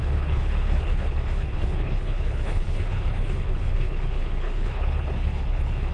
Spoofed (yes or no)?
yes